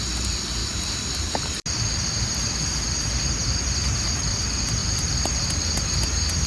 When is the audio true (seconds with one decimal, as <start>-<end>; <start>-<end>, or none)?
0.0-0.6; 1.3-3.4; 4.3-4.8; 5.4-6.5